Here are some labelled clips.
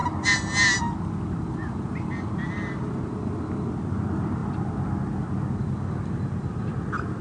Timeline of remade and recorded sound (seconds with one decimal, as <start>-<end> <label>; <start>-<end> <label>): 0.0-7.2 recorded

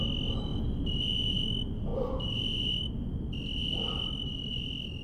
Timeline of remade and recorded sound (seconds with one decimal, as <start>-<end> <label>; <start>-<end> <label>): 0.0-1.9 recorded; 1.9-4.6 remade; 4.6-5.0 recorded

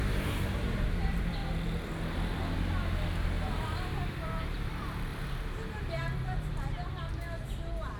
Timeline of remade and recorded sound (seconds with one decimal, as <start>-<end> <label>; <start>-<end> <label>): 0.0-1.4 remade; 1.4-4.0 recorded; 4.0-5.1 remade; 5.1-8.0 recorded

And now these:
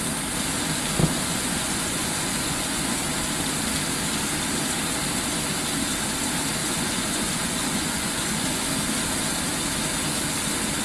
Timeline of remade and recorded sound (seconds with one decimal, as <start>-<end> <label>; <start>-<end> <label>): 0.0-1.0 recorded; 1.0-3.0 remade; 3.0-6.6 recorded; 6.6-8.7 remade; 8.7-10.8 recorded

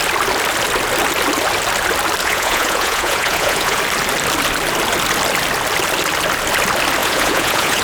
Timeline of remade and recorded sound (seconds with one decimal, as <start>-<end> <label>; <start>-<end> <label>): 0.0-2.2 recorded; 2.2-3.8 remade; 3.8-7.0 recorded; 7.0-7.8 remade

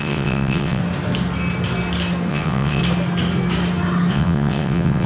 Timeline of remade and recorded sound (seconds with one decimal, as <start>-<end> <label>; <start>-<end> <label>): 0.0-0.8 remade; 0.8-2.3 recorded; 2.3-2.8 remade; 2.8-4.1 recorded; 4.1-5.1 remade

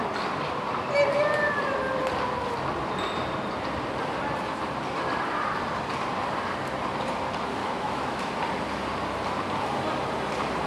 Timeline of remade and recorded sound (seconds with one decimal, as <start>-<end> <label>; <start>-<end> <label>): 0.0-7.6 recorded; 7.6-8.3 remade; 8.3-10.7 recorded

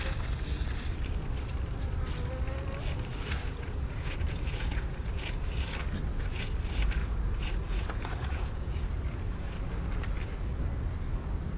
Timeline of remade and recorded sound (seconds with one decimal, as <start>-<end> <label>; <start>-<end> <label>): 0.0-3.1 recorded; 3.1-5.4 remade; 5.4-6.1 recorded; 6.1-6.6 remade; 6.6-7.0 recorded; 7.0-9.5 remade; 9.5-11.6 recorded